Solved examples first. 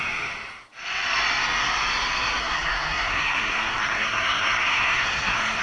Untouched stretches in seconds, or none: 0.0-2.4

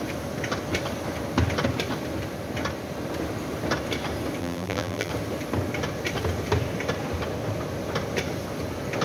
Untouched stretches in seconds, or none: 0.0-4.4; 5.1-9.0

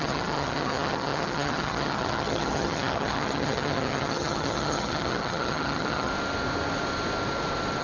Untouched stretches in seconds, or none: 6.1-7.8

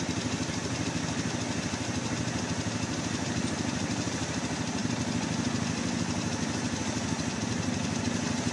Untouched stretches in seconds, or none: 0.0-8.5

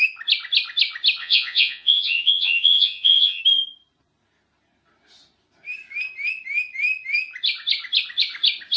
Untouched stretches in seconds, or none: 0.0-1.2; 3.4-8.8

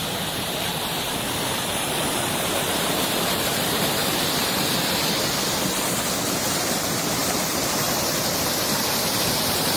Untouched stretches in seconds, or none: 4.7-7.2; 8.1-9.8

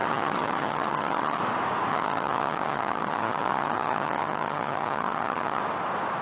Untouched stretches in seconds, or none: 1.4-1.9; 5.6-6.2

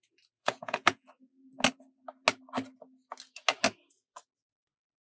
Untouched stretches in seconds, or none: 0.0-0.4; 1.1-5.0